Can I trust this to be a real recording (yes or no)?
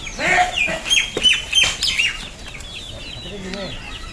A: yes